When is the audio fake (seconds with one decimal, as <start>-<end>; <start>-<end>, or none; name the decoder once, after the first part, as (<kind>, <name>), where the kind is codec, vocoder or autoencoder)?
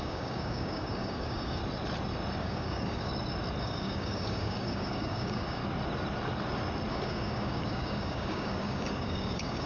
0.0-1.6 (codec, DAC); 2.4-3.1; 3.6-5.6; 6.9-9.7